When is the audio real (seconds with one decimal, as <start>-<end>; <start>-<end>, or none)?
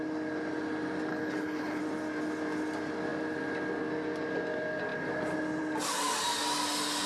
0.0-1.1; 1.8-7.1